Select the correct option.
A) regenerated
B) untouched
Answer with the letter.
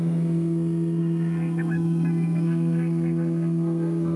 A